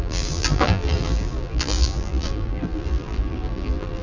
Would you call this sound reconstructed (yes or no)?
yes